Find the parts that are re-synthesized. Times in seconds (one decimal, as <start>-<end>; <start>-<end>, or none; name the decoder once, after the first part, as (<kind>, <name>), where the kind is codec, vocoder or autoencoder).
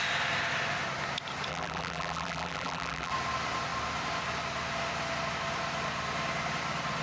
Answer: 1.5-3.1 (vocoder, BigVGAN v2)